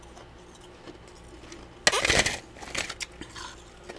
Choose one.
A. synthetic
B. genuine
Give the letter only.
B